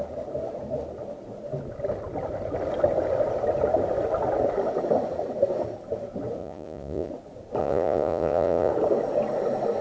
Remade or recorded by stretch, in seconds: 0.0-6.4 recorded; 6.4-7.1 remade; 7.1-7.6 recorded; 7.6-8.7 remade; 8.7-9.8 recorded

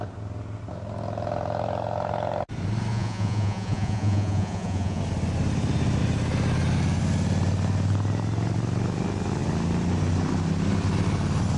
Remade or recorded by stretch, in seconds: 0.0-2.9 recorded; 2.9-5.0 remade; 5.0-11.6 recorded

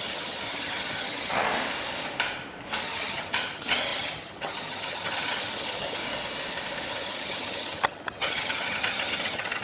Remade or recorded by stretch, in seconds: 0.0-1.5 remade; 1.5-2.8 recorded; 2.8-6.0 remade; 6.0-6.9 recorded; 6.9-9.6 remade

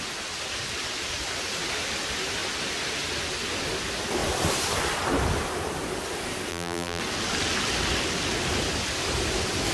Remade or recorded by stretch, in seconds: 0.0-6.5 recorded; 6.5-7.0 remade; 7.0-9.7 recorded

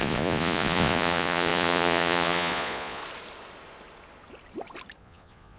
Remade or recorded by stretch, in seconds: 0.0-3.0 remade; 3.0-5.0 recorded; 5.0-5.6 remade

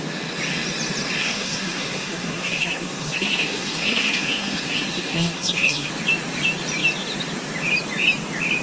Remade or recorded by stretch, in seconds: 0.0-1.2 recorded; 1.2-5.9 remade; 5.9-8.6 recorded

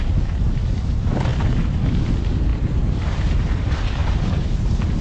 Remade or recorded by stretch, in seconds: 0.0-2.5 recorded; 2.5-3.1 remade; 3.1-5.0 recorded

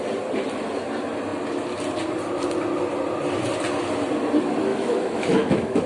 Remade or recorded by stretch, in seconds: 0.0-4.7 recorded; 4.7-5.9 remade